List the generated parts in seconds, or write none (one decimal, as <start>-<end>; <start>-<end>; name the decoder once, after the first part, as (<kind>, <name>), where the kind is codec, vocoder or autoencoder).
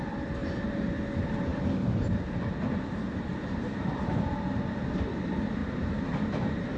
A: 0.4-0.9 (vocoder, BigVGAN v2); 1.5-2.2; 3.3-4.1; 5.6-6.8